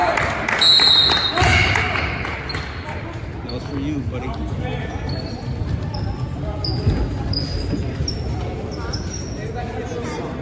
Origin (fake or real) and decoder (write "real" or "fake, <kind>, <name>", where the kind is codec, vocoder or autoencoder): real